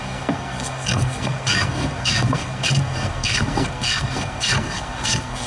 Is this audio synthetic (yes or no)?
yes